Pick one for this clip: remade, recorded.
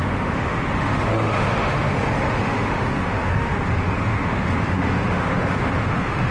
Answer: remade